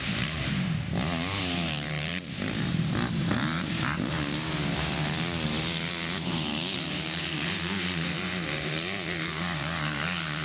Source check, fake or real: fake